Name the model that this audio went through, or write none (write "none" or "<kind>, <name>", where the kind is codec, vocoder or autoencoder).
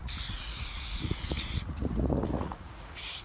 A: vocoder, Vocos